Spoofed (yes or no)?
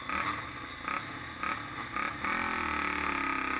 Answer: no